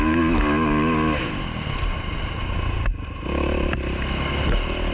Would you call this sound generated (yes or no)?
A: no